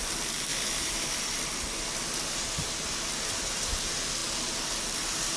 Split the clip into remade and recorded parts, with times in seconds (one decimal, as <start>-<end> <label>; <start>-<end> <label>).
0.0-0.5 recorded; 0.5-3.7 remade; 3.7-5.4 recorded